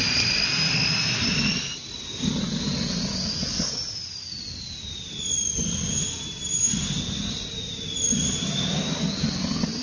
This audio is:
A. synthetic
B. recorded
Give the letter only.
B